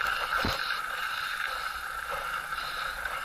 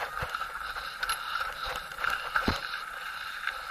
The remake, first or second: second